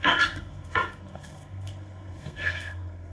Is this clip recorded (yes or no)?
no